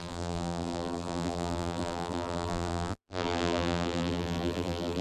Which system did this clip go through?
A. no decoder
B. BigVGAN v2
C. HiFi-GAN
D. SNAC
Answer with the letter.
B